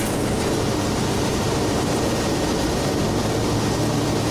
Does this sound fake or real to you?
real